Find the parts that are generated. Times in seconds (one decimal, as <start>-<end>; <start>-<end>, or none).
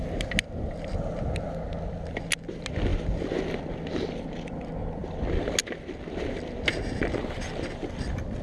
none